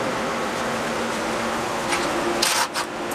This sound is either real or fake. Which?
real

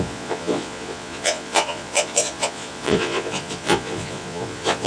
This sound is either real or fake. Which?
fake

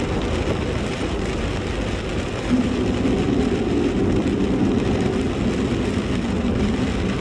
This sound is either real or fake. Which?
real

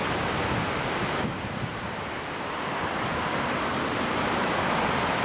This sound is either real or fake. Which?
fake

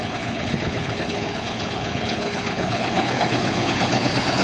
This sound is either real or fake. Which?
fake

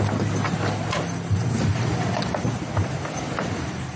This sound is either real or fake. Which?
real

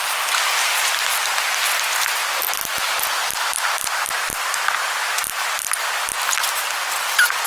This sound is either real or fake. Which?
real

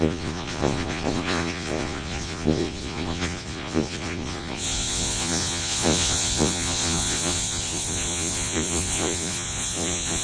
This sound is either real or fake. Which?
fake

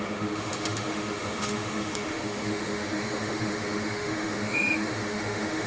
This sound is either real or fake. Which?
fake